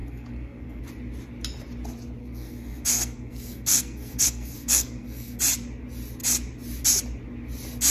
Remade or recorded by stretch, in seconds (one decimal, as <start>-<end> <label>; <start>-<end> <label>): 0.0-0.8 remade; 0.8-2.2 recorded; 2.2-5.4 remade; 5.4-7.9 recorded